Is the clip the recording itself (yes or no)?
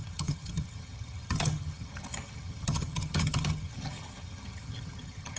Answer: no